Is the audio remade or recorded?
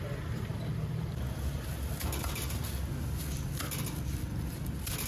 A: recorded